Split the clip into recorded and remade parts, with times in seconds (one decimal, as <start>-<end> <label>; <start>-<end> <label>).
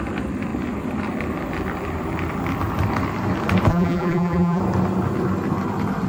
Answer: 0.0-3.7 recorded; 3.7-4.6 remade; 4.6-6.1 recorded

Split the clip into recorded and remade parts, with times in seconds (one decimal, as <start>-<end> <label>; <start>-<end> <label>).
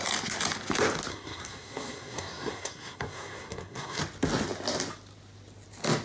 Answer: 0.0-1.1 recorded; 1.1-4.0 remade; 4.0-6.0 recorded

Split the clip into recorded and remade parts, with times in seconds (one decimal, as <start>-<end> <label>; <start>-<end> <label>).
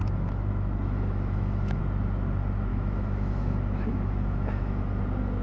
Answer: 0.0-1.8 remade; 1.8-2.7 recorded; 2.7-5.0 remade; 5.0-5.4 recorded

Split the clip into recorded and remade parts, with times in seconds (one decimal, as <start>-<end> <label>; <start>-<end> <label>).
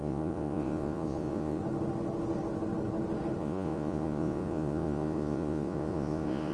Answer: 0.0-1.6 remade; 1.6-3.4 recorded; 3.4-6.5 remade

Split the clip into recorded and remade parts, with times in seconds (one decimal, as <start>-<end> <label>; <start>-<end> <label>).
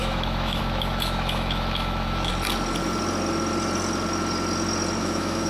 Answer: 0.0-2.3 remade; 2.3-5.0 recorded; 5.0-5.5 remade